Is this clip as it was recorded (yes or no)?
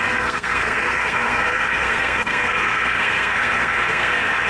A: no